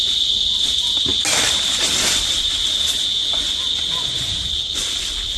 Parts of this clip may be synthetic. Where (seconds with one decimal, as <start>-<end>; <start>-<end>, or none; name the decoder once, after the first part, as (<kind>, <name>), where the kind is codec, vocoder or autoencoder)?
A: 3.2-4.5 (vocoder, Vocos)